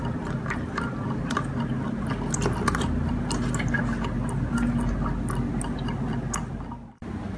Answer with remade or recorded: recorded